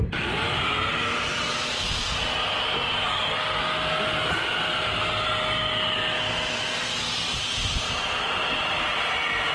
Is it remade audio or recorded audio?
recorded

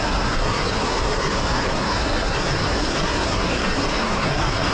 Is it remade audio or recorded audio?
remade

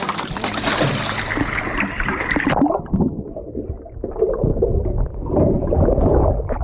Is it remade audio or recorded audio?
remade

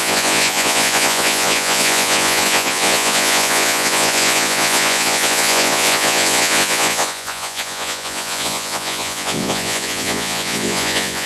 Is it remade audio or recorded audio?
remade